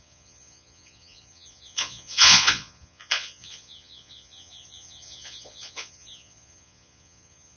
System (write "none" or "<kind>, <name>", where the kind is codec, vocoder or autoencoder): vocoder, Vocos